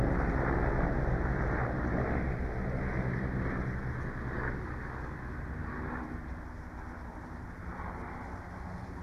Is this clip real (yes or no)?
yes